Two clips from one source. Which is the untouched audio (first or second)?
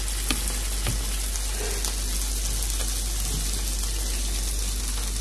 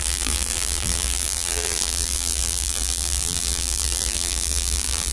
first